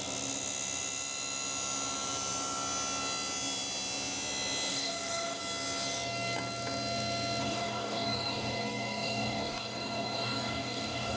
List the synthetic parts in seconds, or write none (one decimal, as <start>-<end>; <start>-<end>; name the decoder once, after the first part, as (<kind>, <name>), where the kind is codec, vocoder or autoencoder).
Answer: 4.7-5.4 (codec, DAC); 7.4-11.2